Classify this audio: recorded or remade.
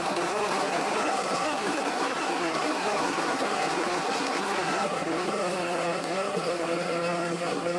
remade